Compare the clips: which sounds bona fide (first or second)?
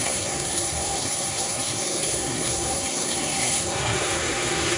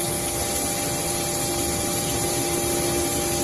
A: second